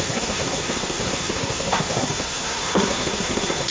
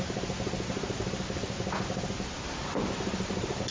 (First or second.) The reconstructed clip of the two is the first